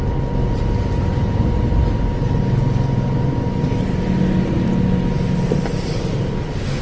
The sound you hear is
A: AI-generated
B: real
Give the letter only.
B